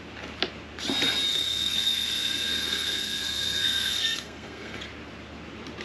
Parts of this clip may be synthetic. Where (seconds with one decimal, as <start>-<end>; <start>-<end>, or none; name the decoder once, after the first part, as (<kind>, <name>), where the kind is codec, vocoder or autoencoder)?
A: 1.3-4.8 (codec, SNAC)